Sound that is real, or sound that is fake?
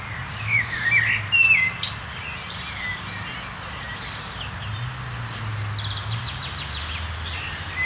real